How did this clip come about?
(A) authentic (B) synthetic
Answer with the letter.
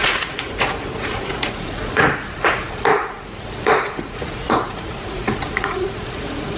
B